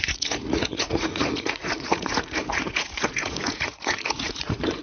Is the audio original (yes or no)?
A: no